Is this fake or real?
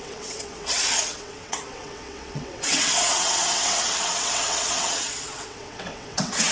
fake